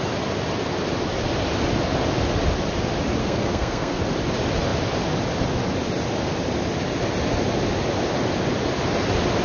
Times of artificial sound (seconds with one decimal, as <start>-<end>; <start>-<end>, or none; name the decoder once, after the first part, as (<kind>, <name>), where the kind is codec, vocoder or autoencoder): 3.2-4.0 (codec, SNAC)